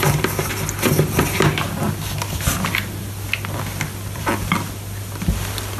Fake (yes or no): no